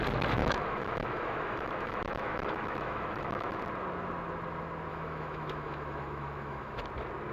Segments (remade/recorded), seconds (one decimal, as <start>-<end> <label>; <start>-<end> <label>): 0.0-0.4 recorded; 0.4-3.6 remade; 3.6-4.9 recorded; 4.9-6.8 remade; 6.8-7.3 recorded